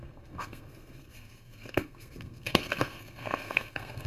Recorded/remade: remade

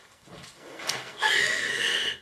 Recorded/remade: remade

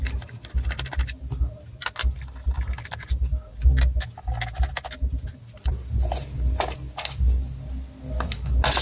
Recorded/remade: recorded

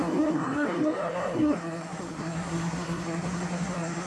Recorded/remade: remade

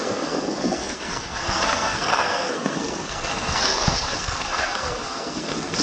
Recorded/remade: remade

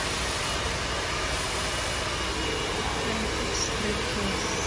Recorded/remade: recorded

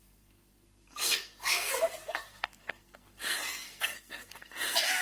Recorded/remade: remade